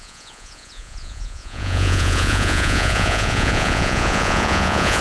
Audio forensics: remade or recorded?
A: remade